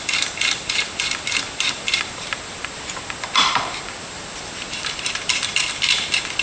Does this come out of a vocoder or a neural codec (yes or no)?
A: yes